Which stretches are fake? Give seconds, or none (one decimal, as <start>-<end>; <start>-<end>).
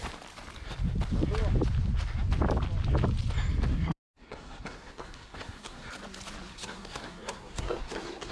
3.7-5.9; 6.5-8.3